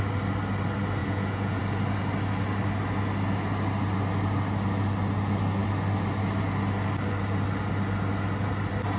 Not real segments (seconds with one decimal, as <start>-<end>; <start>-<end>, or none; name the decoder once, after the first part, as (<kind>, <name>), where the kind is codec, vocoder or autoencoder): 1.0-1.6 (vocoder, Vocos)